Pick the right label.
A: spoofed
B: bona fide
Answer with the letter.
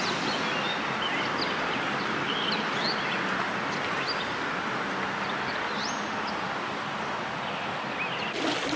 B